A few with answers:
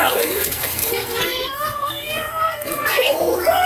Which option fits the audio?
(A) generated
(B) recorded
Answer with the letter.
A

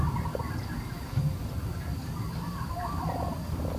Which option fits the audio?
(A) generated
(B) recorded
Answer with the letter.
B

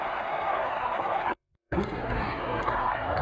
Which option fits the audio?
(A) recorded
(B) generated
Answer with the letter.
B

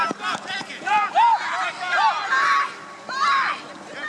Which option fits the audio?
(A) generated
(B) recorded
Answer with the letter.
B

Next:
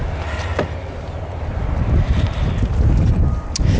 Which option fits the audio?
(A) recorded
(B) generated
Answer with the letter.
A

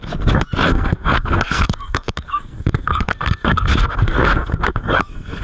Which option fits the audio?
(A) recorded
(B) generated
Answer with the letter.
B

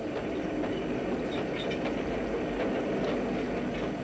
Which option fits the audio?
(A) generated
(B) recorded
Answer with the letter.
B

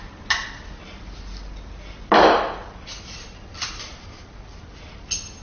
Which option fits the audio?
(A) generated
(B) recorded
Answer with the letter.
B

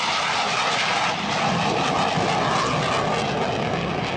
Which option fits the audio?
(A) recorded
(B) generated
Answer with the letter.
A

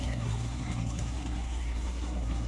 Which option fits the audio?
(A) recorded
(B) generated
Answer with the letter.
B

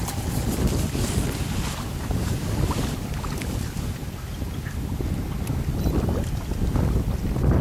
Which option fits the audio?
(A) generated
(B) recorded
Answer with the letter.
B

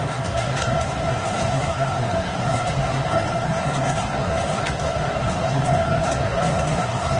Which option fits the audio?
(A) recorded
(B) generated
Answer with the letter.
B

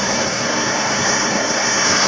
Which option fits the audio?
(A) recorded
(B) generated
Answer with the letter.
B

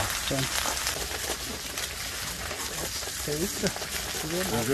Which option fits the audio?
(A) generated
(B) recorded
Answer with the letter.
B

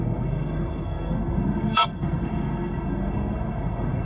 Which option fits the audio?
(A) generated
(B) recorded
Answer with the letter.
A